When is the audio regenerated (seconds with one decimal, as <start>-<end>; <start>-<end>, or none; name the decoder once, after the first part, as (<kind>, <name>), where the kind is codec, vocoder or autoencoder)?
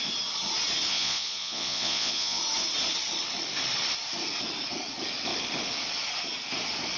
0.9-2.4 (vocoder, Vocos)